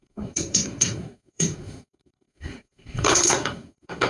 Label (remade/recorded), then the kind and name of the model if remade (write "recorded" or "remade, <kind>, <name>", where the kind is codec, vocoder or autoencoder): remade, codec, SNAC